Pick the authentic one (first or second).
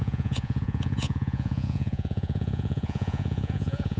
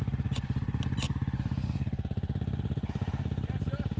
second